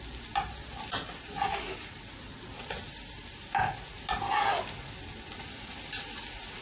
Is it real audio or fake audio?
real